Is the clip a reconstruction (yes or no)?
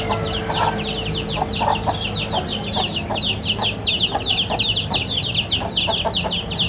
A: no